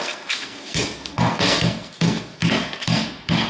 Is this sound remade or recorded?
remade